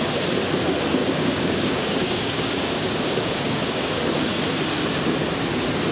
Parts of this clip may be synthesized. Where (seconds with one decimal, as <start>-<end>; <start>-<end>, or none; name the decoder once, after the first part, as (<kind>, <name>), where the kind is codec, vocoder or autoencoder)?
1.0-4.0 (codec, DAC)